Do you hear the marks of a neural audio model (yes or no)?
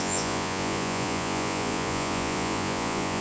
yes